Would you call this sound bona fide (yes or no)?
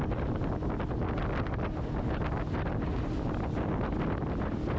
yes